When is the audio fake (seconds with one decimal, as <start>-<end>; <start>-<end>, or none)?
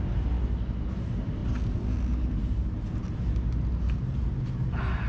none